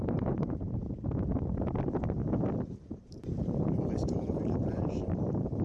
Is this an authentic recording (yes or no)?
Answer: no